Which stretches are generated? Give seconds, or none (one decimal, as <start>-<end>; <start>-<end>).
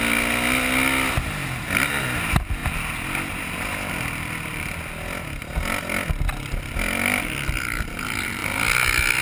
none